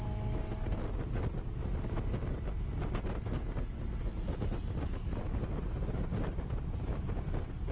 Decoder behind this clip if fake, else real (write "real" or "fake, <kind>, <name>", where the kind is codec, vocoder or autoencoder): real